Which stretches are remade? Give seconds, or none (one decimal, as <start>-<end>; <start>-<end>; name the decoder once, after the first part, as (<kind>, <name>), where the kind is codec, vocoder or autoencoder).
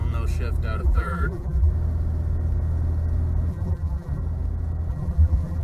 0.8-1.7 (vocoder, BigVGAN v2); 3.5-4.2; 4.9-5.6